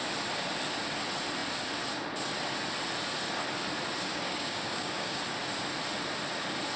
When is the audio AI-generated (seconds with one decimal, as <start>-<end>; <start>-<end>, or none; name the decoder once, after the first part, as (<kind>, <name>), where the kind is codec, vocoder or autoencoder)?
4.1-5.2 (codec, DAC)